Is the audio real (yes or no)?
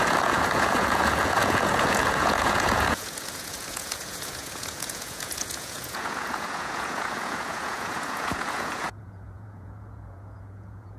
no